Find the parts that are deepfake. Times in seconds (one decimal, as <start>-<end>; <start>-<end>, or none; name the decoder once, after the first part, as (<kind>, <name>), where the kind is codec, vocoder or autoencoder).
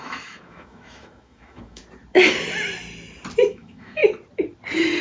0.0-1.8 (autoencoder, DAC-VAE); 3.5-4.0